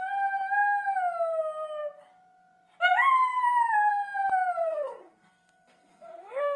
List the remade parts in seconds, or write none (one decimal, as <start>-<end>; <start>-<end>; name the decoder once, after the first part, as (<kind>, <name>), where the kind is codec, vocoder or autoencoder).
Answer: 4.6-6.6 (codec, SNAC)